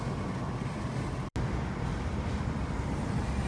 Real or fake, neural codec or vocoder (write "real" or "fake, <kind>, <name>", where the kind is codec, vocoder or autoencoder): real